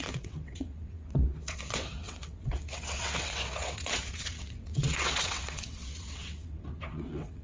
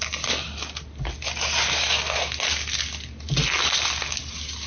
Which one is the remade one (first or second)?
first